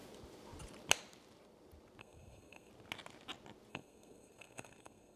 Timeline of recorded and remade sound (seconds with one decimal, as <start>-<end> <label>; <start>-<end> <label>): 0.0-2.0 recorded; 2.0-2.7 remade; 2.7-3.7 recorded; 3.7-5.2 remade